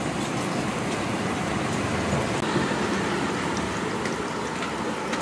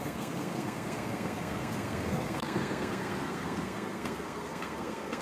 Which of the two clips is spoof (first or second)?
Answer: second